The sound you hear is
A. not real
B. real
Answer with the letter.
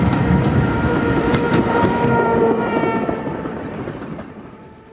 A